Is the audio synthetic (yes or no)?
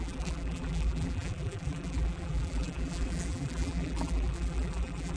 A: yes